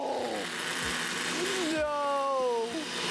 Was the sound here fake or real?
real